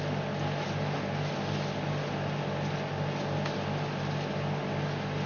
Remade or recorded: recorded